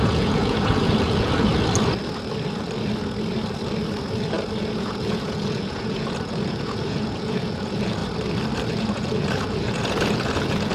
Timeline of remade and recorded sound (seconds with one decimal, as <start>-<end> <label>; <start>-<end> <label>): 0.0-1.5 remade; 1.5-4.6 recorded; 4.6-8.0 remade; 8.0-8.7 recorded; 8.7-10.7 remade

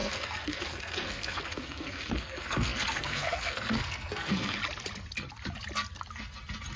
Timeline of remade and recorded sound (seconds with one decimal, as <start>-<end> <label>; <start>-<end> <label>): 0.0-4.6 remade; 4.6-6.8 recorded

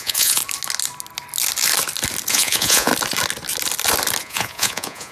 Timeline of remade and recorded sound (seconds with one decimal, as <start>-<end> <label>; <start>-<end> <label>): 0.0-0.4 remade; 0.4-2.3 recorded; 2.3-2.9 remade; 2.9-4.2 recorded; 4.2-5.1 remade

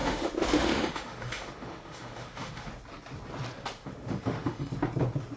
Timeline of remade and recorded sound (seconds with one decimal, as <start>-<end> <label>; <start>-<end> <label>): 0.0-2.7 remade; 2.7-3.8 recorded; 3.8-4.7 remade; 4.7-5.4 recorded